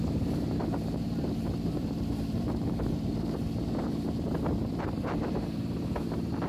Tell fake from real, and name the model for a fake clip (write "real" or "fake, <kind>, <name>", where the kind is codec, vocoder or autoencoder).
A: fake, vocoder, BigVGAN v2